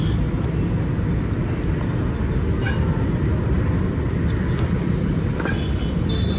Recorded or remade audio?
recorded